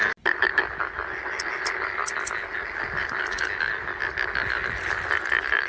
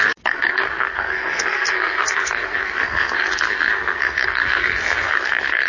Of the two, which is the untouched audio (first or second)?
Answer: first